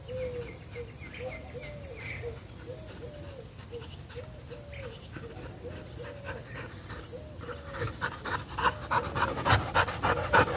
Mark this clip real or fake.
real